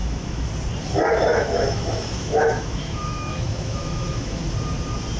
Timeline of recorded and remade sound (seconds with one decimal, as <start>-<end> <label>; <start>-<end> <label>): 0.0-0.5 remade; 0.5-1.3 recorded; 1.3-4.4 remade; 4.4-5.2 recorded